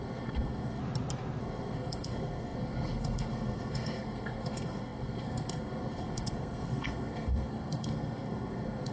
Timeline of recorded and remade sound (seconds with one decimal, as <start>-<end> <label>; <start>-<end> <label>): 0.0-0.8 remade; 0.8-1.4 recorded; 1.4-8.9 remade